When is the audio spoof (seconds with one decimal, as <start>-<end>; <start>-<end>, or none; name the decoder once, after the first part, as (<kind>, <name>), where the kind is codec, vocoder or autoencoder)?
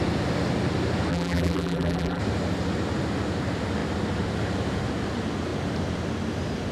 1.1-2.2 (vocoder, BigVGAN v2)